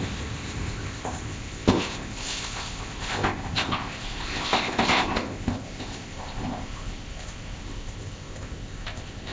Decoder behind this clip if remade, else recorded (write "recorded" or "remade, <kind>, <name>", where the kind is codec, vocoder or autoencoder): remade, codec, ZipCodec